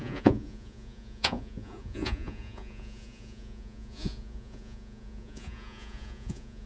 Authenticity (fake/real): fake